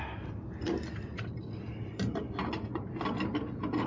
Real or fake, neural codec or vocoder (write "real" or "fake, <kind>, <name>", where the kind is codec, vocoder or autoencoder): real